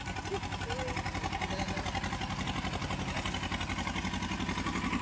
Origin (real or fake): real